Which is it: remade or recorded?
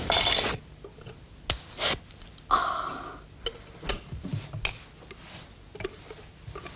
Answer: recorded